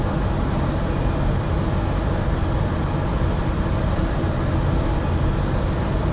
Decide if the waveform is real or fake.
real